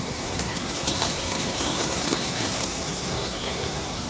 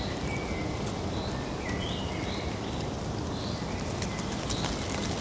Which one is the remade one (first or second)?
first